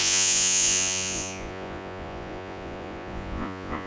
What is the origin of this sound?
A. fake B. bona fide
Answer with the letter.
A